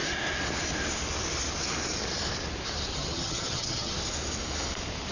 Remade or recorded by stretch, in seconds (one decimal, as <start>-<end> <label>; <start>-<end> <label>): 0.0-2.9 recorded; 2.9-3.9 remade; 3.9-5.1 recorded